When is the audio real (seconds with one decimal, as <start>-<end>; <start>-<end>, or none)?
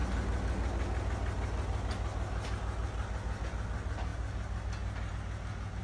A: 0.0-5.8